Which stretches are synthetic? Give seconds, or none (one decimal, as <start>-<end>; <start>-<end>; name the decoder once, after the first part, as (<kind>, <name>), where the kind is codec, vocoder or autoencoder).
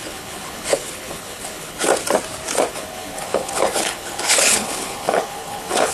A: 0.0-1.9 (codec, HILCodec); 2.7-5.9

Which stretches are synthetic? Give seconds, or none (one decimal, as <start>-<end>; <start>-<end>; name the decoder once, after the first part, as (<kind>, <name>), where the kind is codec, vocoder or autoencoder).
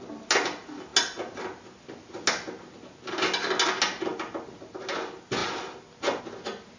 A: none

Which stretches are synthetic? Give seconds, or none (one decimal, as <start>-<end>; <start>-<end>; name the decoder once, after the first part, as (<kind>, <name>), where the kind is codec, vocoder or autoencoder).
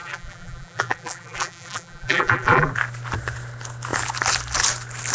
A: 0.0-2.7 (vocoder, BigVGAN v2)